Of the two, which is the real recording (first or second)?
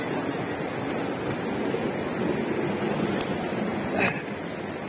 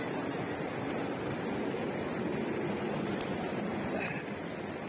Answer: first